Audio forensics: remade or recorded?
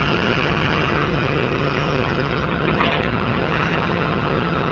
remade